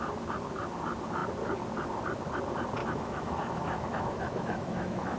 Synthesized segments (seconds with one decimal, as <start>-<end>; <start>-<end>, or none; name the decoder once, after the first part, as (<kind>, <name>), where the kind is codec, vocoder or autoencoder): 2.8-5.2 (autoencoder, DAC-VAE)